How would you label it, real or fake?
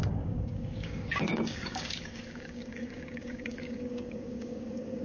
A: fake